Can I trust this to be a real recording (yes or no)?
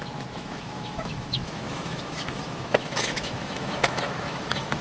no